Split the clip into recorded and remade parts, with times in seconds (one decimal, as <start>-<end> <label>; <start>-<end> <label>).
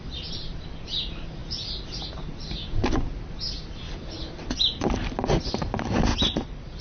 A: 0.0-6.8 recorded